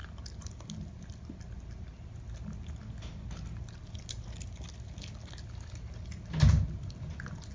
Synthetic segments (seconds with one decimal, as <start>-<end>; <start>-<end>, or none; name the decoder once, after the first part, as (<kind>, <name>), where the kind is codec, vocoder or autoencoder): none